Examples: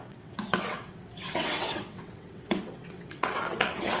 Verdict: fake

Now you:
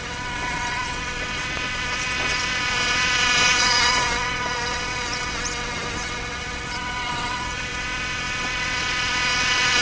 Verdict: fake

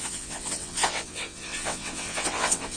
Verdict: fake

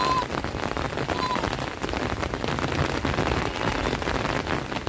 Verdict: real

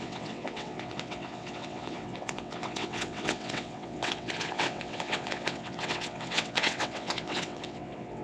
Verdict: fake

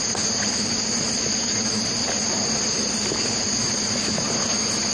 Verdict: real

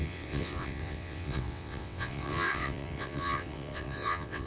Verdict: fake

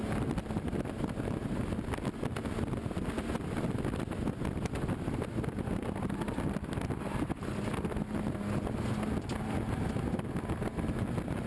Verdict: real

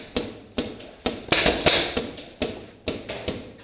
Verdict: real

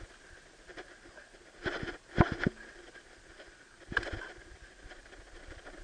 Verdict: real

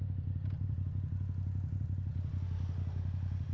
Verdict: real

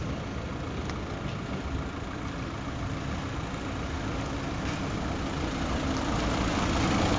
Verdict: real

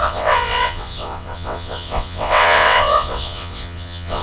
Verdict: fake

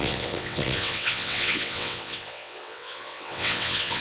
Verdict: fake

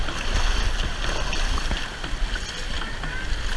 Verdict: real